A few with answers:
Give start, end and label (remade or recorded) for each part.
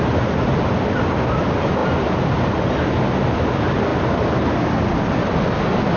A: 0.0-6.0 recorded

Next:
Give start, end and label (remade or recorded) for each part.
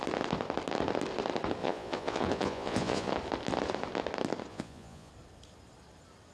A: 0.0-1.6 recorded; 1.6-3.1 remade; 3.1-4.5 recorded; 4.5-5.1 remade; 5.1-6.3 recorded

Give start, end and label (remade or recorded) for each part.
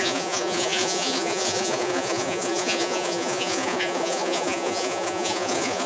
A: 0.0-5.9 remade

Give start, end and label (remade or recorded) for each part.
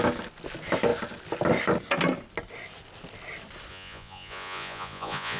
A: 0.0-3.7 recorded; 3.7-5.4 remade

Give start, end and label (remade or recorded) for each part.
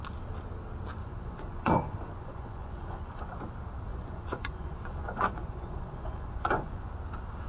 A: 0.0-1.0 recorded; 1.0-3.3 remade; 3.3-3.9 recorded; 3.9-6.9 remade; 6.9-7.5 recorded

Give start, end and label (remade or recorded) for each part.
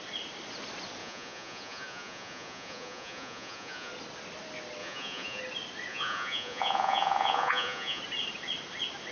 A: 0.0-1.0 recorded; 1.0-3.9 remade; 3.9-4.8 recorded; 4.8-5.4 remade; 5.4-5.9 recorded; 5.9-8.0 remade; 8.0-9.1 recorded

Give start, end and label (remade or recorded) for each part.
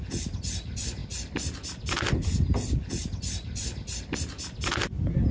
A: 0.0-5.3 recorded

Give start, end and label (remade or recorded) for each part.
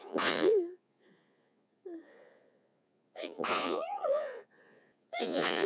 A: 0.0-5.7 remade